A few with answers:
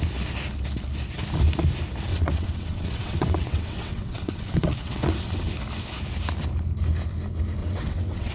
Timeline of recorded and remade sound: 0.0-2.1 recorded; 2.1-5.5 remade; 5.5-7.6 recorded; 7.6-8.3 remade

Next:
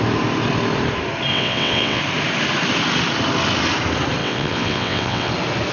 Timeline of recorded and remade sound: 0.0-1.3 recorded; 1.3-2.0 remade; 2.0-4.2 recorded; 4.2-5.3 remade; 5.3-5.7 recorded